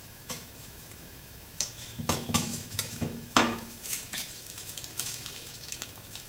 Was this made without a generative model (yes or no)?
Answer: no